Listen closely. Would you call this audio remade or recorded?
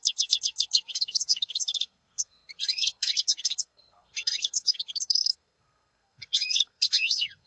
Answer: remade